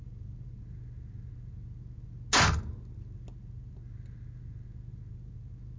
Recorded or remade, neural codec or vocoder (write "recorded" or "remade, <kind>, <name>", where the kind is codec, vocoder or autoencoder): recorded